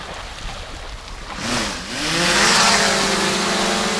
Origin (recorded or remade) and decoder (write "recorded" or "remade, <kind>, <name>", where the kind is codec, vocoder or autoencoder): recorded